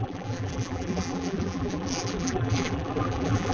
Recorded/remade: remade